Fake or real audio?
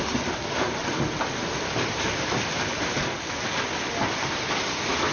real